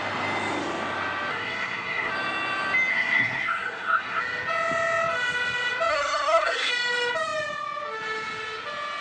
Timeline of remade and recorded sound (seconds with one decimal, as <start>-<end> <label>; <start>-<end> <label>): 0.0-1.3 recorded; 1.3-2.1 remade; 2.1-2.9 recorded; 2.9-4.2 remade; 4.2-5.9 recorded; 5.9-6.7 remade; 6.7-9.0 recorded